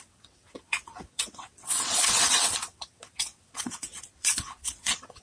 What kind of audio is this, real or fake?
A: fake